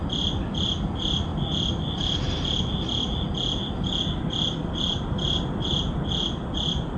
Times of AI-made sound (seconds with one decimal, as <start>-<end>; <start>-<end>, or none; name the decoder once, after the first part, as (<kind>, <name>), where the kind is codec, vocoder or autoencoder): none

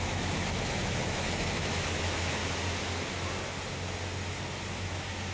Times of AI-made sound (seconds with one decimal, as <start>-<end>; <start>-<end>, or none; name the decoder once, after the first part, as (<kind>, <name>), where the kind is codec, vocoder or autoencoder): 0.0-2.4 (autoencoder, DAC-VAE); 4.7-5.3

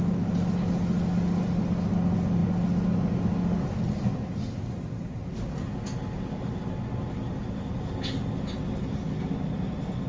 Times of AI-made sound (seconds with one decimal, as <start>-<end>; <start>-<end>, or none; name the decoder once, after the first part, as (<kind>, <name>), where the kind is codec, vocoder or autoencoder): none

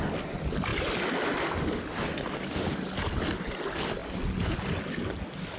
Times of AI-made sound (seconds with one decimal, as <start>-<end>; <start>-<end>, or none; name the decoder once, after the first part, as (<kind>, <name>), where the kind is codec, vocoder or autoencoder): none

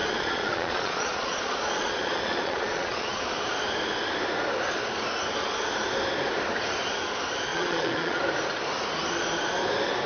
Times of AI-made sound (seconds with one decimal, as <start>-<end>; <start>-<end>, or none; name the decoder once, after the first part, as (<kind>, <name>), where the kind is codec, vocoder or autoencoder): 0.0-3.2 (vocoder, Vocos); 7.5-8.2